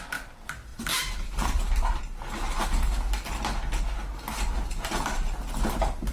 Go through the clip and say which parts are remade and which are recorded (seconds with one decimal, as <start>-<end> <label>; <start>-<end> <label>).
0.0-0.7 recorded; 0.7-2.0 remade; 2.0-6.1 recorded